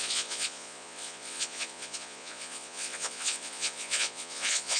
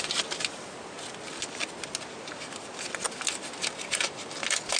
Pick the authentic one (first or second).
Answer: second